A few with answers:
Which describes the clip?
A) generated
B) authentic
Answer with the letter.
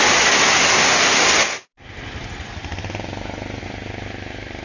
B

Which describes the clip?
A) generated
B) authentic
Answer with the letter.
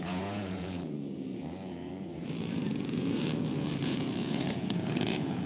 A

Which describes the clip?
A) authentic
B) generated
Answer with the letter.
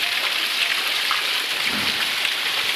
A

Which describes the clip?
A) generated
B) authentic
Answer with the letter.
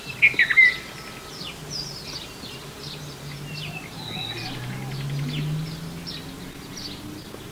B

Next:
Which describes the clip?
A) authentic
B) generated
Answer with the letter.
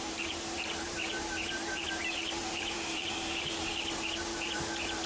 B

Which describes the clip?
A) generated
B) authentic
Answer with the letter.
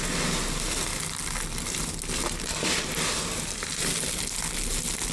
B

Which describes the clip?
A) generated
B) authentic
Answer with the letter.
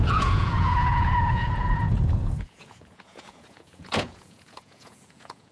A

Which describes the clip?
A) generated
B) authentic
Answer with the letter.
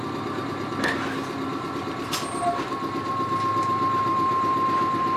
B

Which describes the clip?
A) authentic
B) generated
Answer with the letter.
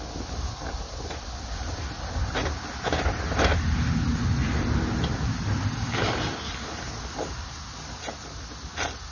A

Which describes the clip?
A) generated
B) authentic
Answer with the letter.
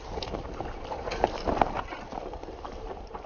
B